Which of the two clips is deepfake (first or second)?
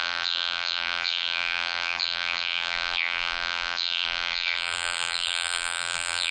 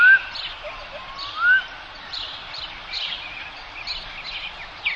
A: first